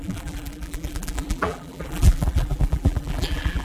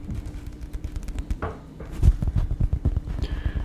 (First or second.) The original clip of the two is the second